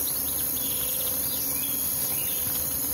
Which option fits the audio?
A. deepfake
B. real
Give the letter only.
A